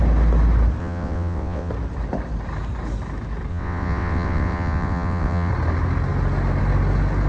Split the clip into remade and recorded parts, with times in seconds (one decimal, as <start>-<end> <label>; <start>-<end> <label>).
0.0-0.8 recorded; 0.8-1.7 remade; 1.7-3.5 recorded; 3.5-5.5 remade; 5.5-7.3 recorded